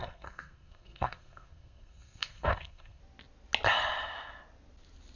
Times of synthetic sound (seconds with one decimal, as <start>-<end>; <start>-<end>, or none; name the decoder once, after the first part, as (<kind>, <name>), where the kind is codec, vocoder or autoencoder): 0.0-3.0 (codec, SNAC)